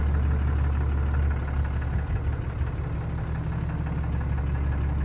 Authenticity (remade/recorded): recorded